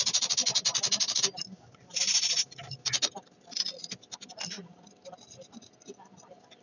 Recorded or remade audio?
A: recorded